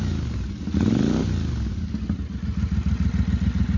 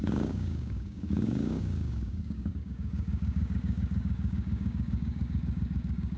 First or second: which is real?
first